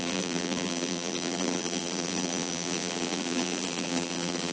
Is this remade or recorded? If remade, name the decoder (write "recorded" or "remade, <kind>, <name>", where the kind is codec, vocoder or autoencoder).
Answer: remade, vocoder, BigVGAN v2